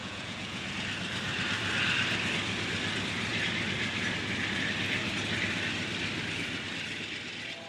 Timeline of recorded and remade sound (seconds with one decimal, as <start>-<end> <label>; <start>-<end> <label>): 0.0-0.7 remade; 0.7-7.7 recorded